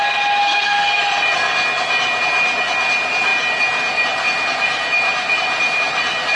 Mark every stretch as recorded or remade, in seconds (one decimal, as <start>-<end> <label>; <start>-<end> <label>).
0.0-0.4 recorded; 0.4-1.0 remade; 1.0-6.4 recorded